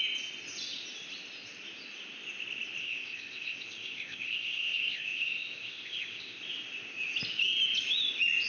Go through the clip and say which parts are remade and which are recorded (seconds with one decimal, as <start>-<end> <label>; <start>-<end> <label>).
0.0-2.8 recorded; 2.8-6.4 remade; 6.4-8.5 recorded